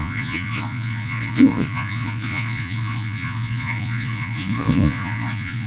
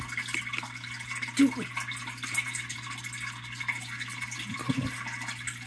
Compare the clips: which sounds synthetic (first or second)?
first